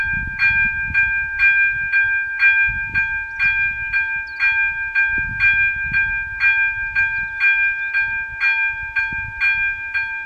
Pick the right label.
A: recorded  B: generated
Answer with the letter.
A